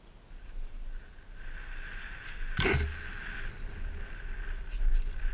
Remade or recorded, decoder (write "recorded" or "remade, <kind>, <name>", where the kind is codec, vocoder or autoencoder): recorded